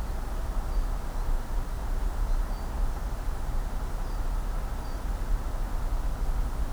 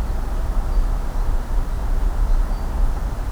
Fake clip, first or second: second